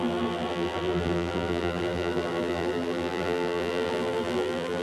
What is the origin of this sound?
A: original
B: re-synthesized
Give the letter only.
B